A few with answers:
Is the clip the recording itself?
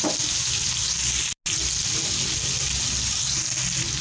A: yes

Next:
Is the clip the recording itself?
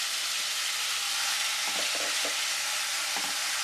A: yes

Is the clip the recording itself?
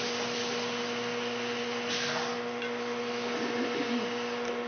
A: yes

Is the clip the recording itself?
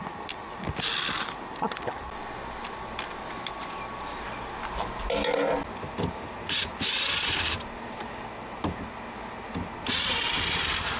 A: yes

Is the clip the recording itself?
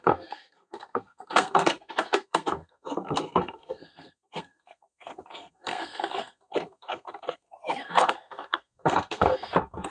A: no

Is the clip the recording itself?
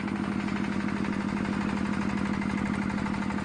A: yes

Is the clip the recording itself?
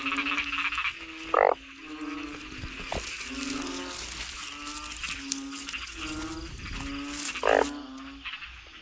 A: yes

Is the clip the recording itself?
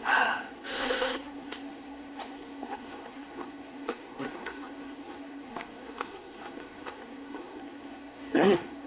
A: no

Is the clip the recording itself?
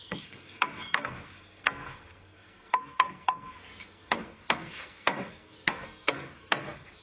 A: no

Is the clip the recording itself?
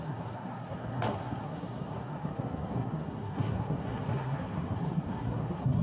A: no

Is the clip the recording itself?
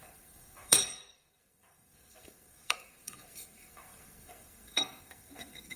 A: no